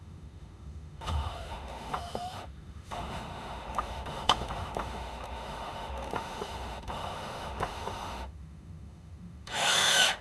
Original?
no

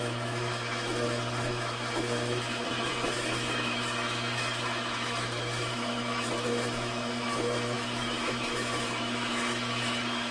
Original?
no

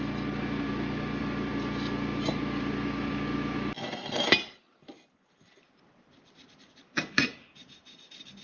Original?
yes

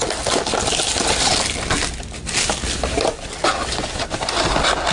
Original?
yes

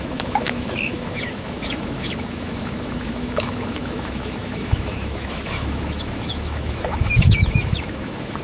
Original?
no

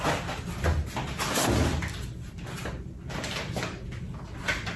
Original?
yes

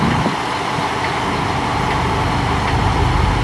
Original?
yes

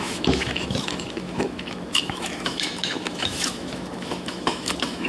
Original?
no